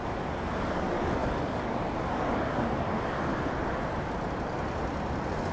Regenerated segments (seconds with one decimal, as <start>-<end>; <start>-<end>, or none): 0.6-3.3